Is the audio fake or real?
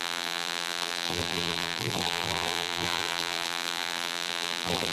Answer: fake